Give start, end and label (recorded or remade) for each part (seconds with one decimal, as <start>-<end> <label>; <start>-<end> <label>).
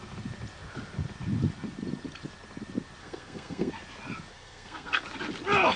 0.0-3.0 recorded; 3.0-3.7 remade; 3.7-4.3 recorded; 4.3-5.0 remade; 5.0-5.8 recorded